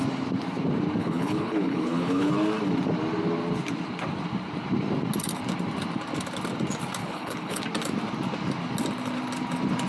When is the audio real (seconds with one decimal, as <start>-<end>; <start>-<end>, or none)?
0.0-1.0; 2.3-7.0; 7.6-9.9